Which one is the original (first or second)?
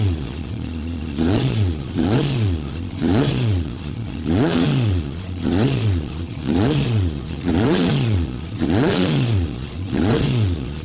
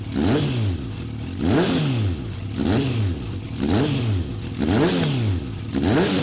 second